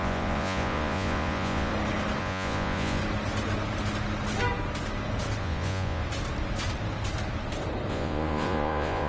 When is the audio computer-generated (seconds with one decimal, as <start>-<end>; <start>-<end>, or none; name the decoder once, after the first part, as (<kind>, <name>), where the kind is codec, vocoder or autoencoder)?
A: 0.0-1.7 (vocoder, Vocos); 2.2-3.0; 5.4-6.0; 7.9-9.1